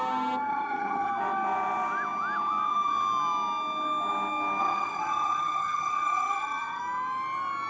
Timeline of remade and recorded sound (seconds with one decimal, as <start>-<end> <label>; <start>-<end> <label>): 0.0-0.5 recorded; 0.5-1.1 remade; 1.1-4.6 recorded; 4.6-6.8 remade; 6.8-7.7 recorded

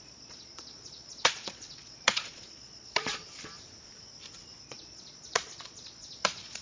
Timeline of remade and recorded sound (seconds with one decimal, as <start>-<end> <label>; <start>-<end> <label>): 0.0-3.2 remade; 3.2-4.6 recorded; 4.6-6.6 remade

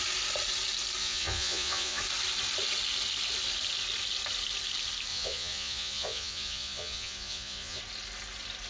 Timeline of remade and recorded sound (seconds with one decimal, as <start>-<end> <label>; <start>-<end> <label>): 0.0-1.0 recorded; 1.0-2.0 remade; 2.0-5.1 recorded; 5.1-7.8 remade; 7.8-8.7 recorded

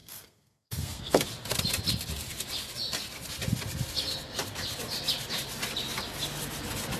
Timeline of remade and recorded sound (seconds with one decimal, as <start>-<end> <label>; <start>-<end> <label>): 0.0-1.2 remade; 1.2-7.0 recorded

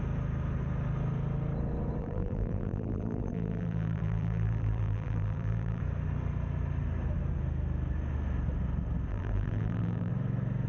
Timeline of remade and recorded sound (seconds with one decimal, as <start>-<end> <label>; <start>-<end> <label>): 0.0-2.0 recorded; 2.0-5.8 remade; 5.8-9.1 recorded; 9.1-10.1 remade; 10.1-10.7 recorded

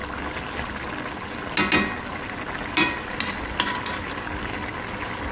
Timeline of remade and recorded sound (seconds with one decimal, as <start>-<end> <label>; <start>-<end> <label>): 0.0-5.3 recorded